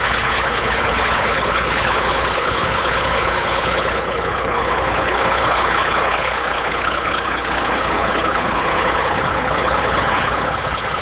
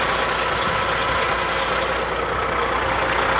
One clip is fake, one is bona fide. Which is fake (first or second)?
first